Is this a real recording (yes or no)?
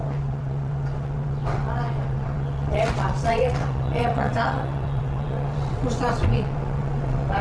no